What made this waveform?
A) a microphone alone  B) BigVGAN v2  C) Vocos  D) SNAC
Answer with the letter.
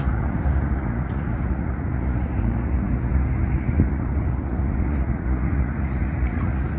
C